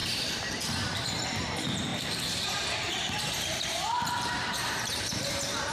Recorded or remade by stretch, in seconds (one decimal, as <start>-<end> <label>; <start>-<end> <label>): 0.0-5.7 remade